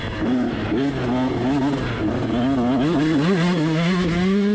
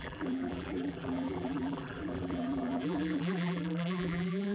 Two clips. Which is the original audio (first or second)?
first